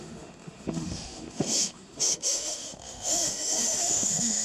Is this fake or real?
fake